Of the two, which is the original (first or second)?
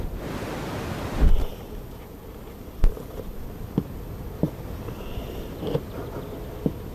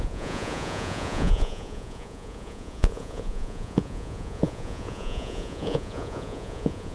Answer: first